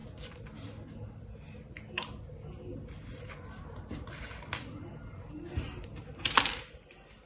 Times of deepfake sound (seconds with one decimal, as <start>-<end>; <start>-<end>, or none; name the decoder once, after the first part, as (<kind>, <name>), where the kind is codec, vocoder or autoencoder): none